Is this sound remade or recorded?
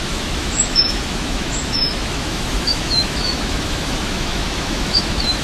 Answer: remade